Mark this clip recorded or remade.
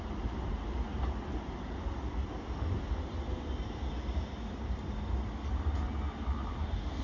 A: recorded